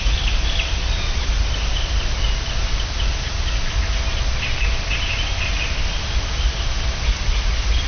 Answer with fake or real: real